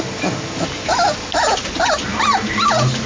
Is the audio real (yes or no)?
yes